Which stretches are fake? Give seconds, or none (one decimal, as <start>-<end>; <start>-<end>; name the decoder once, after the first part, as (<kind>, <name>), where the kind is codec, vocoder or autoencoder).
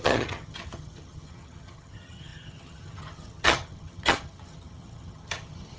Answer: 0.0-5.8 (vocoder, HiFi-GAN)